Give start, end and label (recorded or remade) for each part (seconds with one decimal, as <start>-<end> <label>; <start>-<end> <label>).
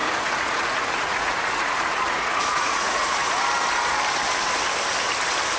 0.0-3.3 remade; 3.3-5.6 recorded